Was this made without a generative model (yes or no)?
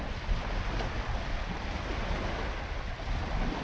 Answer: yes